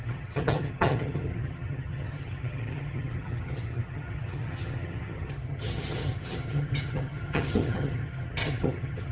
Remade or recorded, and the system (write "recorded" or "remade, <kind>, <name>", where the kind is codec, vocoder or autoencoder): remade, vocoder, HiFi-GAN